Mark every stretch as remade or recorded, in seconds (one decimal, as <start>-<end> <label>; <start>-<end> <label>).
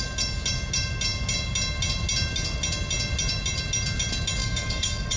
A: 0.0-4.4 recorded; 4.4-5.2 remade